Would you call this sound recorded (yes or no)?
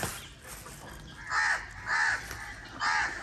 yes